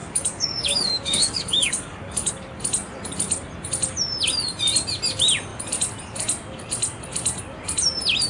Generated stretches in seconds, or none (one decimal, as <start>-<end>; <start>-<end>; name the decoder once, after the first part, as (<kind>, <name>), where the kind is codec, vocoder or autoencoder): 0.0-2.3 (codec, DAC)